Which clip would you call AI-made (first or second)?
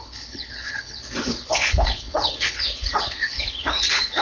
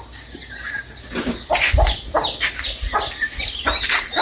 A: first